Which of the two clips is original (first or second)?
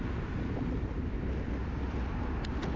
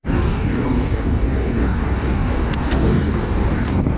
first